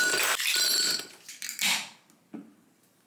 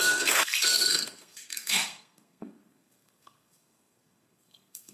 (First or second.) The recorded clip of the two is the first